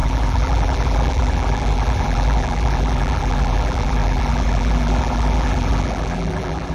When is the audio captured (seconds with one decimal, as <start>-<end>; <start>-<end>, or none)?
none